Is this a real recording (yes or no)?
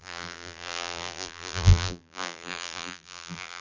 no